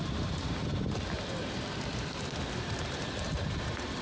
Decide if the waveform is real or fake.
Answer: real